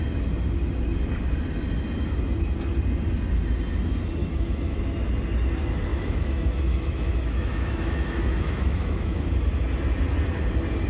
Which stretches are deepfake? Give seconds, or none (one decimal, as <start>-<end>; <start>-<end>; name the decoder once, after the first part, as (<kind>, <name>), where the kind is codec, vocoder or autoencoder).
4.2-4.8 (autoencoder, DAC-VAE); 5.9-9.2